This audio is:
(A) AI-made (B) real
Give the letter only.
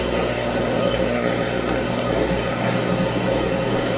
A